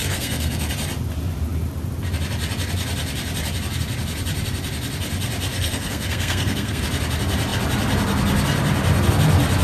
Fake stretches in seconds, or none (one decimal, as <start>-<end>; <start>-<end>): 0.0-0.7; 5.5-6.8